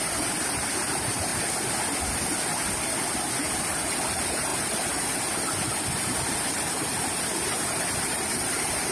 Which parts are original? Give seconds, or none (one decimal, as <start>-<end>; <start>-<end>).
1.3-3.8